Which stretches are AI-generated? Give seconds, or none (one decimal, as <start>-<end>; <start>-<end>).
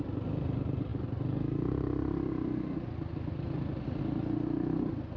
none